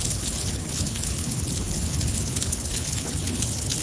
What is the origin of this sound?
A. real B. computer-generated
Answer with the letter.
B